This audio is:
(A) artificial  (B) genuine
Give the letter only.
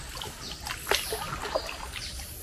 B